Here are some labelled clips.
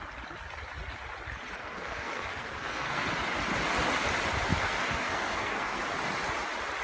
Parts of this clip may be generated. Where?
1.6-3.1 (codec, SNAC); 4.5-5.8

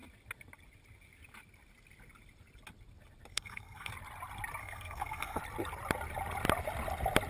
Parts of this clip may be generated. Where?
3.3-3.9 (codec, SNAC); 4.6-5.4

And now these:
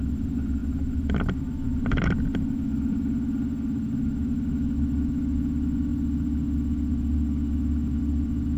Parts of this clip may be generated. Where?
none

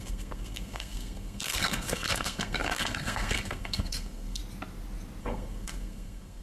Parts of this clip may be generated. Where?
0.0-4.4 (codec, SNAC); 5.2-6.4